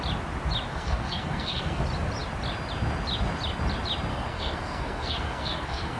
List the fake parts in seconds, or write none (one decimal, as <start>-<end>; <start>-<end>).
0.7-1.8; 4.1-6.0